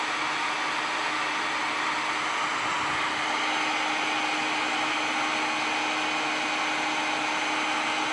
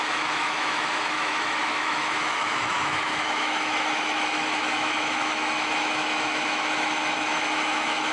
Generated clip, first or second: second